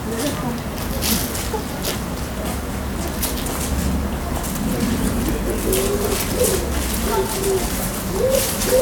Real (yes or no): yes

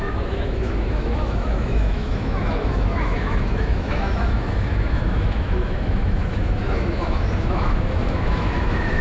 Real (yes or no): no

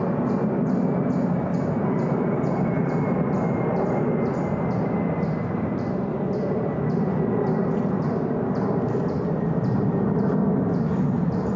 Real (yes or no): yes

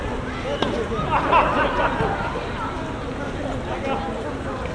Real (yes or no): yes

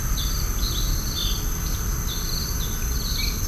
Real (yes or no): yes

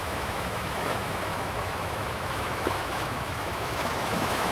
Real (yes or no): no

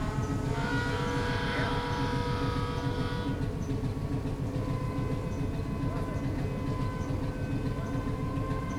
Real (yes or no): yes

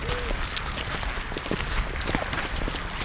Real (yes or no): yes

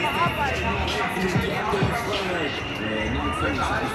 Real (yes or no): yes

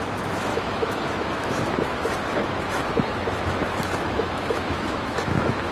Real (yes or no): no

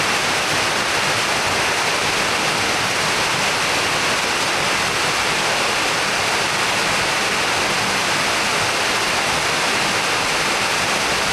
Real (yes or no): yes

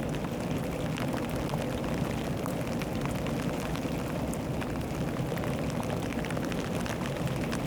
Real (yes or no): yes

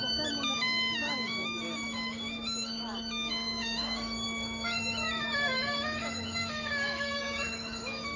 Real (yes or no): no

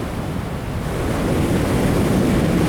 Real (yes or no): yes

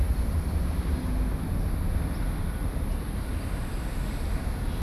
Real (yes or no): yes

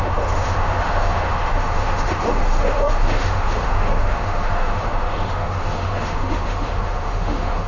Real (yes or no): no